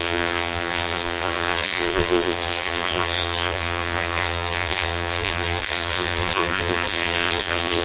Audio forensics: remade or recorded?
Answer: remade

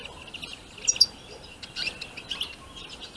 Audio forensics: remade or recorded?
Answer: recorded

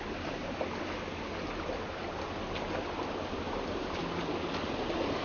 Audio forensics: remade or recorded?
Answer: recorded